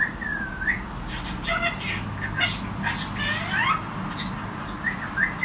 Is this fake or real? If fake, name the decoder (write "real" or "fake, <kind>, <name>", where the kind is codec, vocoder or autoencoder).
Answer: real